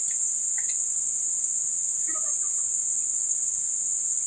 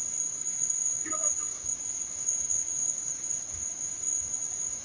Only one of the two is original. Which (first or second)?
first